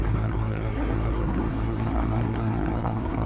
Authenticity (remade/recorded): remade